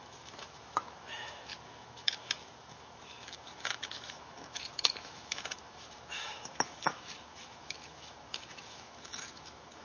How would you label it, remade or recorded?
remade